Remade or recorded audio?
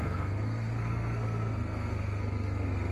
remade